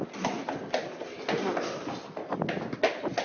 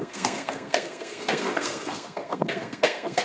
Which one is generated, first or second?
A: second